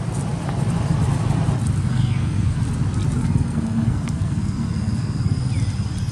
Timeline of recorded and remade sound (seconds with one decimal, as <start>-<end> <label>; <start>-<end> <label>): 0.0-1.8 recorded; 1.8-2.6 remade; 2.6-3.2 recorded; 3.2-5.4 remade; 5.4-6.1 recorded